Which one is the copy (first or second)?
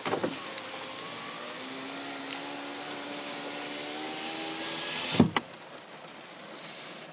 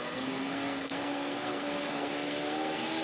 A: second